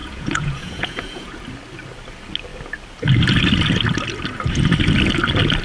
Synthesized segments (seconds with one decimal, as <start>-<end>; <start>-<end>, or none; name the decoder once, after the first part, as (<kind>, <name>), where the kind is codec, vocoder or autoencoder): 0.0-1.4 (vocoder, Vocos)